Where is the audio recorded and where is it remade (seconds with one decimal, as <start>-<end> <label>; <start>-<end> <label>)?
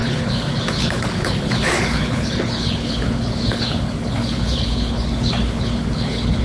0.0-6.4 remade